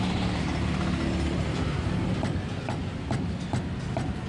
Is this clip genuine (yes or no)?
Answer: yes